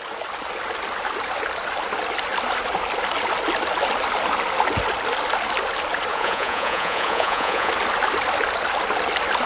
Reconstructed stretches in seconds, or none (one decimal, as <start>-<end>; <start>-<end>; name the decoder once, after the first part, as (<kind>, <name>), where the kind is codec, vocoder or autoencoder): 6.1-7.7 (vocoder, Vocos)